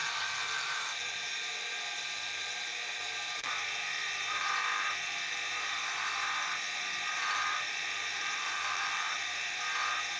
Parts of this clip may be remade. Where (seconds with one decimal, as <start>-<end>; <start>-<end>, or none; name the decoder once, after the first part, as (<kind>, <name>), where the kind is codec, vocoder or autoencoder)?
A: 0.0-3.5 (vocoder, BigVGAN v2); 4.0-4.5; 7.2-9.6